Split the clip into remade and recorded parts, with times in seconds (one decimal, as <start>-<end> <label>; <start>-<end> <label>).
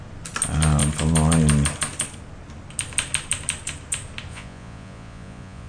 0.0-4.3 recorded; 4.3-5.7 remade